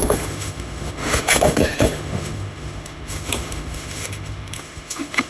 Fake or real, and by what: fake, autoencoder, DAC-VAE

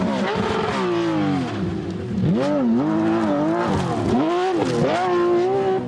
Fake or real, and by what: real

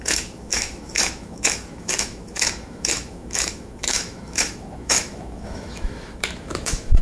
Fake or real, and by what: fake, autoencoder, DAC-VAE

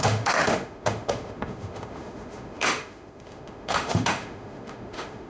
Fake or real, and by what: fake, autoencoder, DAC-VAE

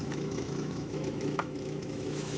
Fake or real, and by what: fake, autoencoder, DAC-VAE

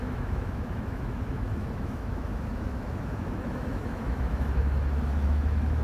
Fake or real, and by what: fake, autoencoder, DAC-VAE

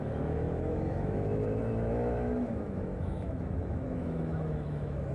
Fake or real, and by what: fake, autoencoder, DAC-VAE